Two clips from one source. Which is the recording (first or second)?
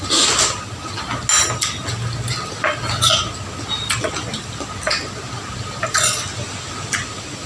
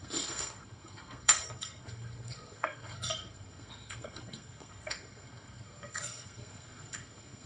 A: first